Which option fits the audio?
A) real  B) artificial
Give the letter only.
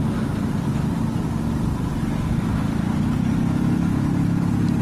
A